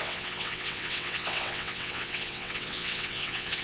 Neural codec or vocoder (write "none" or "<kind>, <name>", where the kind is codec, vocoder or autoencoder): vocoder, WaveNeXt